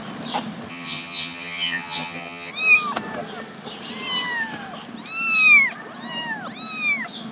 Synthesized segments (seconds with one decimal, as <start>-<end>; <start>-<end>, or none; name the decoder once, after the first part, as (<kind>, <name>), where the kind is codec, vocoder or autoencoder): 0.7-2.5 (vocoder, HiFi-GAN)